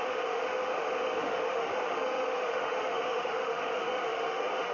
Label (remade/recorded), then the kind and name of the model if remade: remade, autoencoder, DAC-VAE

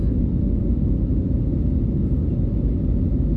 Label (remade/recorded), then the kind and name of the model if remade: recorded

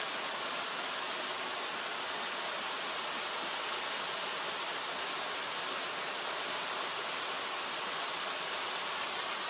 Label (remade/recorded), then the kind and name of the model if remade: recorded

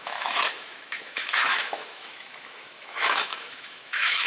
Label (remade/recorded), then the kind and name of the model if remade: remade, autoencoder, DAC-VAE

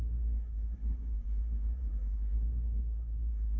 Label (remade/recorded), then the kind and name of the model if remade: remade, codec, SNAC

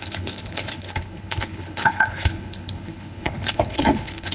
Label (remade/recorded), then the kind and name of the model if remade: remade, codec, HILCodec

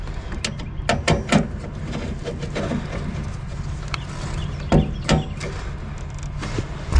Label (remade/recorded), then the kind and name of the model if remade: recorded